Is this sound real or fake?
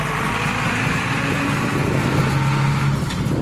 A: real